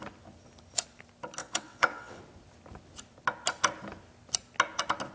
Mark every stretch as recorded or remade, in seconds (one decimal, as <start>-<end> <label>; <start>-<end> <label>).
0.0-1.4 recorded; 1.4-2.2 remade; 2.2-5.1 recorded